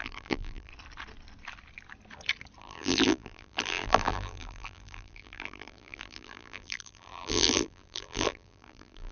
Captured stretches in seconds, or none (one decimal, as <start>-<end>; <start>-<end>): 0.7-2.6